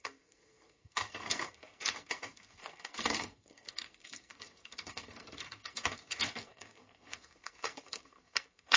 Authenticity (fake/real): fake